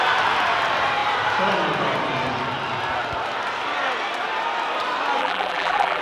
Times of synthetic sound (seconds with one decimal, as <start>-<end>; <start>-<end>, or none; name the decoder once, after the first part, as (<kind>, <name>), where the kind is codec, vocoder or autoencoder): 5.2-6.0 (vocoder, BigVGAN v2)